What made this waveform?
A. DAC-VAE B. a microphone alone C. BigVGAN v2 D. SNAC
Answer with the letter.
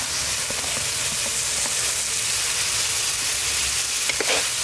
B